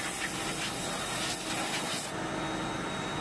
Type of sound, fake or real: real